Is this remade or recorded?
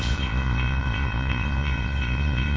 remade